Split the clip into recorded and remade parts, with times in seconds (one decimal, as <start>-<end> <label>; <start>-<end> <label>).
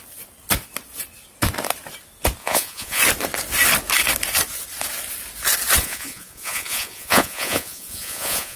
0.0-2.4 recorded; 2.4-3.0 remade; 3.0-5.8 recorded; 5.8-8.6 remade